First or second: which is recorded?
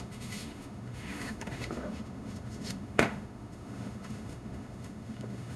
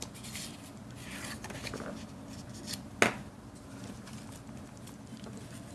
second